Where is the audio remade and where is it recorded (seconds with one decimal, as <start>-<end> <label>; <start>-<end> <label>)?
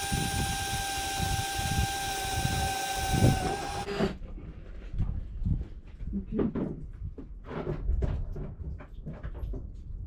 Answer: 0.0-10.1 recorded